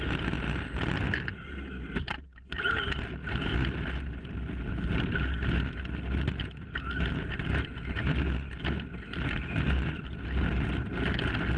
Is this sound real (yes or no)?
yes